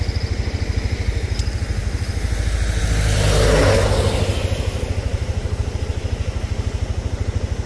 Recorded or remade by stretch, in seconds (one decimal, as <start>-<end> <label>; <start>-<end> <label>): 0.0-1.8 recorded; 1.8-2.8 remade; 2.8-5.1 recorded; 5.1-5.6 remade; 5.6-7.7 recorded